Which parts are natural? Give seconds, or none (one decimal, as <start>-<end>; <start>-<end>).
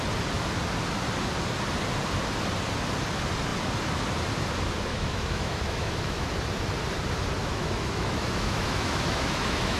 0.0-4.9; 6.3-7.4